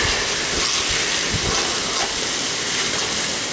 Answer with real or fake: real